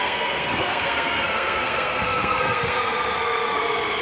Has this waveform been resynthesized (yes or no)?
yes